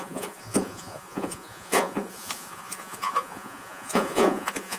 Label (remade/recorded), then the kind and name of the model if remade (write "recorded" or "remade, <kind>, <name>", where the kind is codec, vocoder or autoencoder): remade, vocoder, Vocos